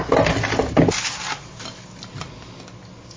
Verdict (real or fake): real